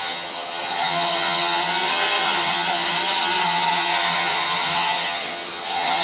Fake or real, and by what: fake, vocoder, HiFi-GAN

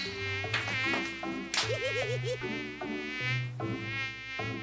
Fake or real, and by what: real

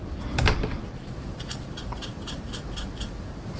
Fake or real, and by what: real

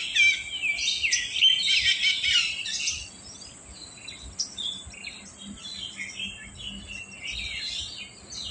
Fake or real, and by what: real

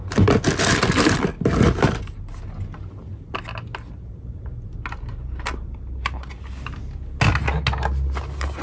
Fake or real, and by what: real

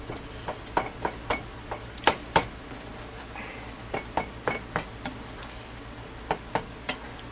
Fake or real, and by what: real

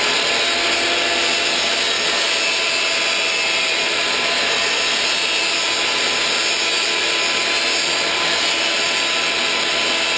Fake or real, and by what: real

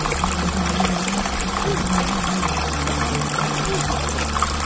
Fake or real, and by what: real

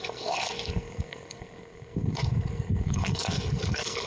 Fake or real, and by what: fake, codec, SNAC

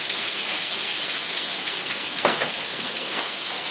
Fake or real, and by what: fake, codec, SNAC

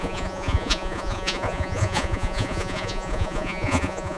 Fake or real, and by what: fake, vocoder, Vocos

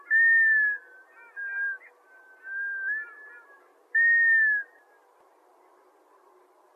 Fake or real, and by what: real